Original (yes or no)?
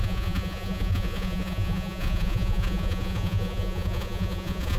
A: no